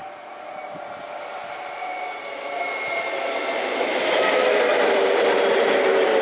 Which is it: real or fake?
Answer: real